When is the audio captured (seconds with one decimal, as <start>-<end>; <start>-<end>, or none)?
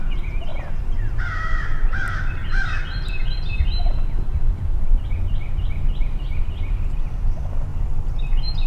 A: none